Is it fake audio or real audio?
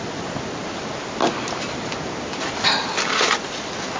real